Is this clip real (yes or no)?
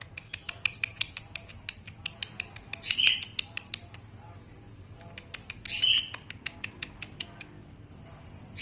yes